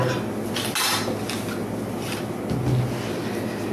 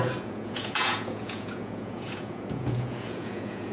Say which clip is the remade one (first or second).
second